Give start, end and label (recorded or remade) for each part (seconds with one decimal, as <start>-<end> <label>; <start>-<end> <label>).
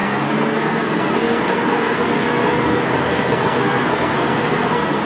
0.0-5.1 remade